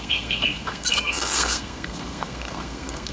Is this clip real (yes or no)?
no